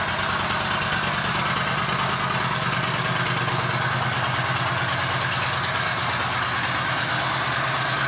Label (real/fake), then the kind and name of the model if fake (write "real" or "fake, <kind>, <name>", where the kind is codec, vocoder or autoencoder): real